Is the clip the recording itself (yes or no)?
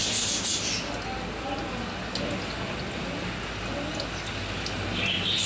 yes